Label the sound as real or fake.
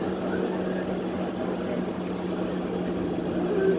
real